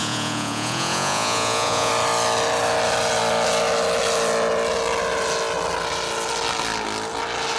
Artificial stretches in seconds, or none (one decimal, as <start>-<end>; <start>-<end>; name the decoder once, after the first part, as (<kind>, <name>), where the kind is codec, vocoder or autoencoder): 0.0-1.9 (vocoder, Vocos)